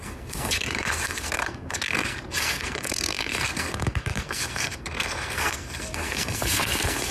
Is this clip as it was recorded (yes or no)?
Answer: no